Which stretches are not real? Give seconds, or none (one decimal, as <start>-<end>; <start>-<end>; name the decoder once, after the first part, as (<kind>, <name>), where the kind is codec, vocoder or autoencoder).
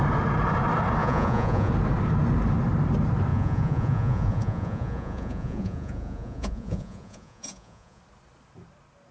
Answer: 1.0-1.7 (vocoder, Vocos); 3.3-8.0